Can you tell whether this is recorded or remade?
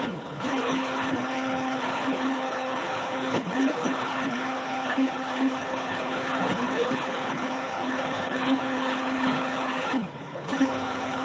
remade